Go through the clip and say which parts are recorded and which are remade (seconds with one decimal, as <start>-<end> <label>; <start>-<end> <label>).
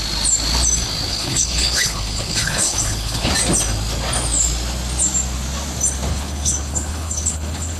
0.0-1.1 recorded; 1.1-3.3 remade; 3.3-6.1 recorded; 6.1-7.8 remade